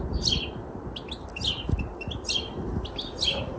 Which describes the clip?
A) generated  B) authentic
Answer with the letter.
B